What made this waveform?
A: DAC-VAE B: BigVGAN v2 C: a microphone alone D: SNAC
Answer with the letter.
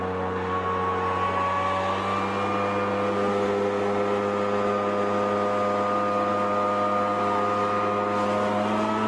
C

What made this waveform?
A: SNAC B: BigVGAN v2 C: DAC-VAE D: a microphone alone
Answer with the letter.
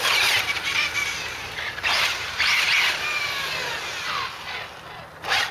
D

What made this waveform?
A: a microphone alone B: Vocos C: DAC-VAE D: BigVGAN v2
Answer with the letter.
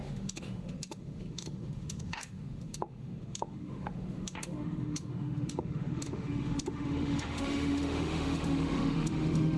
C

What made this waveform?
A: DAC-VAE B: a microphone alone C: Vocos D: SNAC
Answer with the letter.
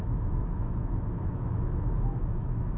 A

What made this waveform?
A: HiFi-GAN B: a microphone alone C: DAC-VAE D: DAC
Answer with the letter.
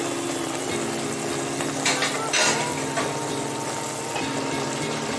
B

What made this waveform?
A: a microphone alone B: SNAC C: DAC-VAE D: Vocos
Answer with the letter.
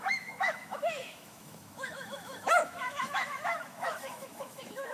C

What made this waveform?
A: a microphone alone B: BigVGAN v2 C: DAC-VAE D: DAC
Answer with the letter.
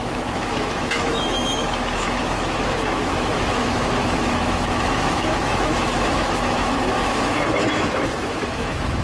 C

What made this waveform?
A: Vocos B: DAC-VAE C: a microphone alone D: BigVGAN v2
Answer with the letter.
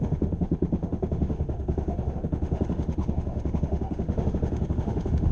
B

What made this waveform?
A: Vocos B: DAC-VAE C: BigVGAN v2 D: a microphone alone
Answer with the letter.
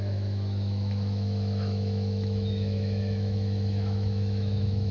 B